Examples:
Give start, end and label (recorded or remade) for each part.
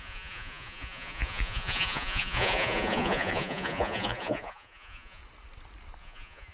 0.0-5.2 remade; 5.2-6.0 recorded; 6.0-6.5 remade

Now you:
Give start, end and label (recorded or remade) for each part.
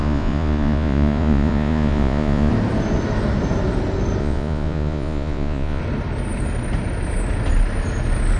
0.0-2.5 remade; 2.5-4.2 recorded; 4.2-5.8 remade; 5.8-8.4 recorded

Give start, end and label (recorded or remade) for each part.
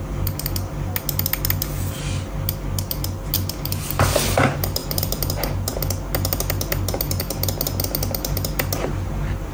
0.0-4.8 recorded; 4.8-5.3 remade; 5.3-9.5 recorded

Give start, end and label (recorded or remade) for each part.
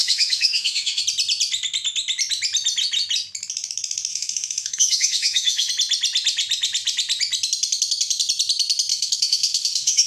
0.0-1.0 remade; 1.0-4.1 recorded; 4.1-5.7 remade; 5.7-8.9 recorded; 8.9-10.1 remade